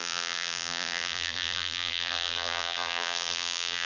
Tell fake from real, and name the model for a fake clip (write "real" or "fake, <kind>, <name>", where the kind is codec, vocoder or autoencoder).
fake, vocoder, BigVGAN v2